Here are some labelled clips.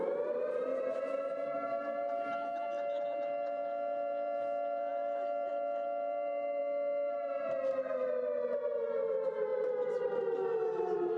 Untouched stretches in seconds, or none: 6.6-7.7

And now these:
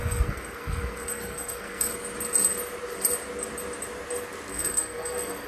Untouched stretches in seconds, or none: 1.9-4.5

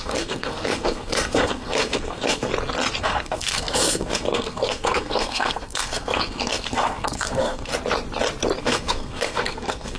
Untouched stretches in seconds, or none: 2.5-3.0; 7.7-8.6